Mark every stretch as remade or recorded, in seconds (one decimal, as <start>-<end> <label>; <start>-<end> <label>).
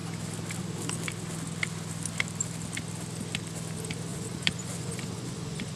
0.0-4.1 recorded; 4.1-5.8 remade